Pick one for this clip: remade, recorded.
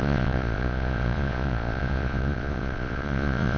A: remade